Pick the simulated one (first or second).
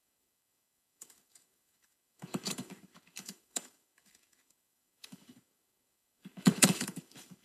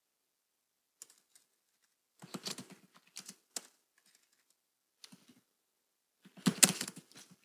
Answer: first